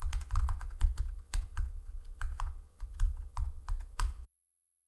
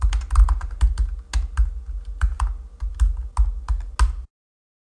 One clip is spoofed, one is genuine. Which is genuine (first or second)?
second